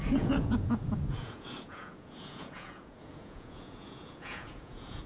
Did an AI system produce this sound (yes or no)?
yes